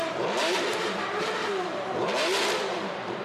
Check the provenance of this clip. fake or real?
real